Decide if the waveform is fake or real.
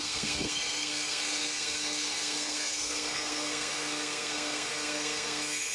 fake